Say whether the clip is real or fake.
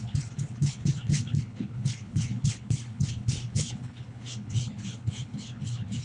fake